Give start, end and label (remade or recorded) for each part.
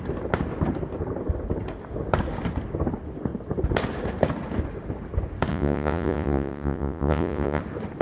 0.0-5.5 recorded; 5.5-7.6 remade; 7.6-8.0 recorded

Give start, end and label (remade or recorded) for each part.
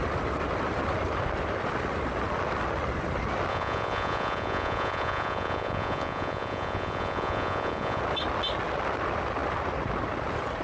0.0-3.5 recorded; 3.5-8.0 remade; 8.0-10.6 recorded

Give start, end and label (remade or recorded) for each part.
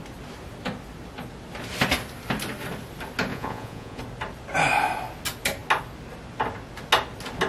0.0-3.3 recorded; 3.3-4.0 remade; 4.0-7.5 recorded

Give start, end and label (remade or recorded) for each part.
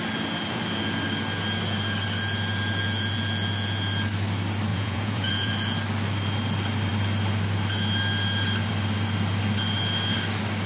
0.0-4.7 recorded; 4.7-5.5 remade; 5.5-10.7 recorded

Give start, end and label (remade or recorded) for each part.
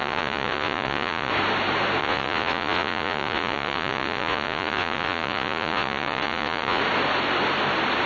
0.0-1.3 remade; 1.3-2.0 recorded; 2.0-6.8 remade; 6.8-8.1 recorded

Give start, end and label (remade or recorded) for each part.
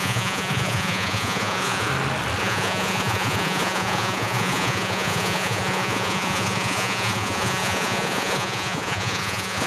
0.0-1.9 remade; 1.9-2.4 recorded; 2.4-9.7 remade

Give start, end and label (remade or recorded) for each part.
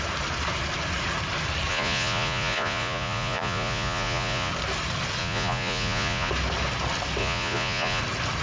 0.0-1.7 recorded; 1.7-4.5 remade; 4.5-5.2 recorded; 5.2-6.3 remade; 6.3-7.2 recorded; 7.2-8.0 remade; 8.0-8.4 recorded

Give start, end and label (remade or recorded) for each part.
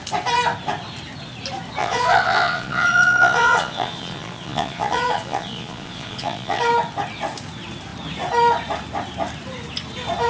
0.0-1.8 recorded; 1.8-6.6 remade; 6.6-10.3 recorded